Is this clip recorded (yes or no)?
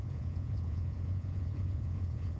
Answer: no